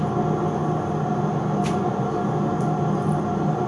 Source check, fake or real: real